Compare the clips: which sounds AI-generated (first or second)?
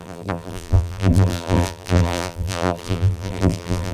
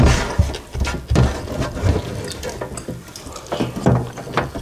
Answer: first